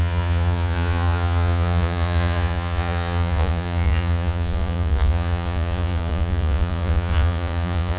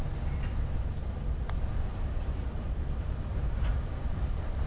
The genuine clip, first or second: second